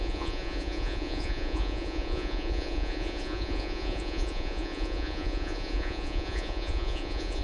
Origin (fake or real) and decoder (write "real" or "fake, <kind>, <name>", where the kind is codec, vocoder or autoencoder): fake, vocoder, Vocos